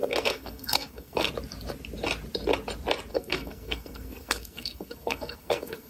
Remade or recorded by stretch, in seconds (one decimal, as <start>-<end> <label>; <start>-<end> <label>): 0.0-1.3 remade; 1.3-3.1 recorded; 3.1-5.9 remade